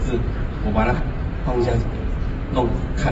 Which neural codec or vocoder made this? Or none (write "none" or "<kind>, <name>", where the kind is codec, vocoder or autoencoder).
none